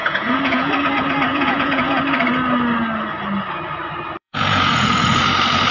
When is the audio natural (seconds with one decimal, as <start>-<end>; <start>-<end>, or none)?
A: 0.7-1.3; 2.0-4.2; 5.2-5.7